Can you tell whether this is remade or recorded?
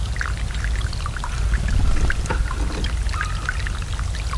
recorded